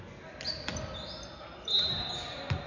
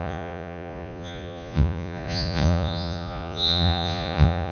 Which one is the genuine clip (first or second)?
first